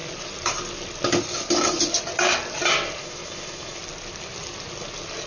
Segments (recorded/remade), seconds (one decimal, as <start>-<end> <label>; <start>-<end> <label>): 0.0-3.0 recorded; 3.0-3.8 remade; 3.8-5.3 recorded